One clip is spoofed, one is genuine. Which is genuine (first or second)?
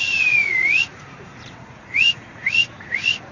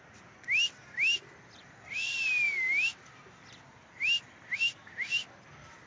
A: second